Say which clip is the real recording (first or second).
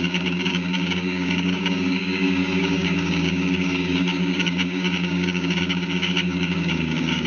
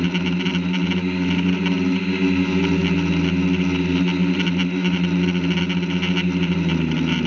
second